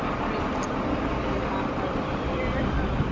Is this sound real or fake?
real